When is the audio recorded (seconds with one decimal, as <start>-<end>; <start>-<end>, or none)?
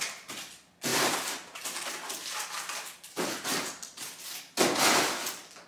0.0-0.9; 4.3-5.7